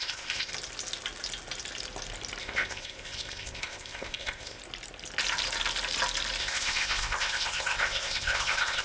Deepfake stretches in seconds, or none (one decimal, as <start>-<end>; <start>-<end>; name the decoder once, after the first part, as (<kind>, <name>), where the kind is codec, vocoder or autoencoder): 0.0-0.5 (codec, ZipCodec); 2.4-4.6; 6.4-8.8